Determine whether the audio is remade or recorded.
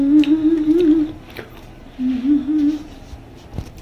recorded